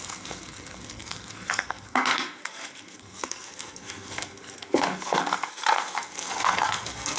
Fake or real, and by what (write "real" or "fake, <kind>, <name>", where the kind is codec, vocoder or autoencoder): fake, codec, SNAC